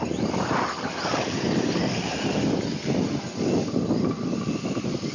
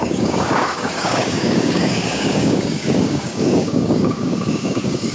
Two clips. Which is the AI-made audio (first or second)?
second